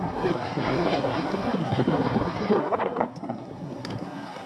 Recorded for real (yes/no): no